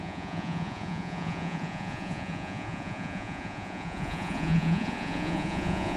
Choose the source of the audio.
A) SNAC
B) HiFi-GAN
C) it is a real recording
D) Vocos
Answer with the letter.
D